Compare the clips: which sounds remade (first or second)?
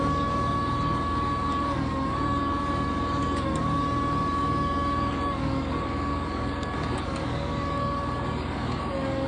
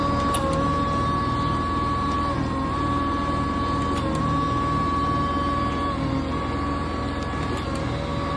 first